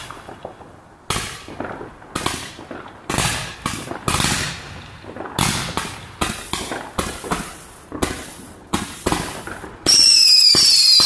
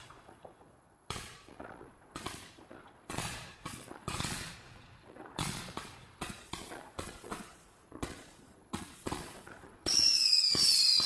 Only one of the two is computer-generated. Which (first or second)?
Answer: second